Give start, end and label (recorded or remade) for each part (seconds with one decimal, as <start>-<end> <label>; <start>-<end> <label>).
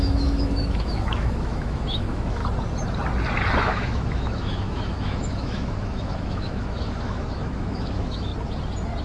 0.0-2.4 remade; 2.4-3.6 recorded; 3.6-8.3 remade; 8.3-9.0 recorded